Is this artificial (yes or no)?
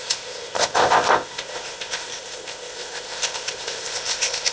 yes